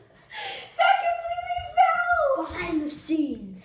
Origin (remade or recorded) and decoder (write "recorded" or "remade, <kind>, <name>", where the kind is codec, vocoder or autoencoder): recorded